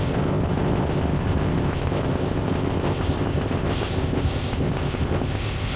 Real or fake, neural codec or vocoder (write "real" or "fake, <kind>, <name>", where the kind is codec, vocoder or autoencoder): fake, codec, ZipCodec